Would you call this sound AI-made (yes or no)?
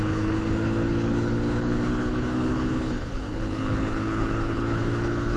yes